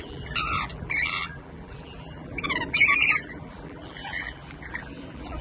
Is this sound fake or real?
fake